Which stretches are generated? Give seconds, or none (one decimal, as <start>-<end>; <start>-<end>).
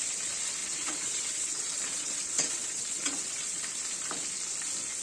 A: 0.6-3.6